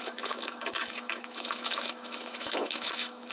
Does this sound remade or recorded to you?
remade